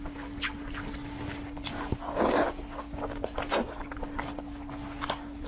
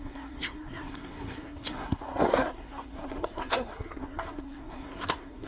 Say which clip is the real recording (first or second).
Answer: first